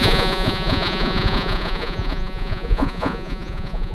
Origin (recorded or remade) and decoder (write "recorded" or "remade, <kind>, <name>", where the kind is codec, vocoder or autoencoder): remade, vocoder, Vocos